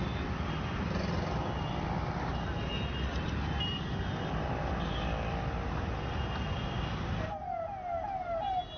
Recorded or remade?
recorded